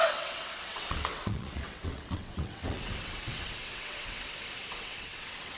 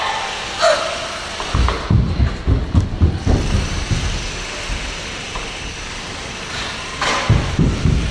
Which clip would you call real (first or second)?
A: second